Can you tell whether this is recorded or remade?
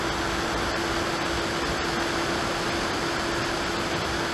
recorded